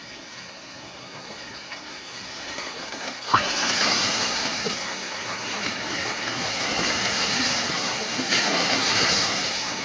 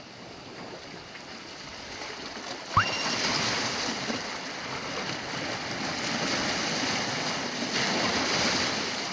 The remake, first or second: first